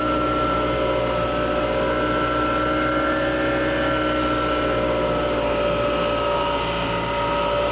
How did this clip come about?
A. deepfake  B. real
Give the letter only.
B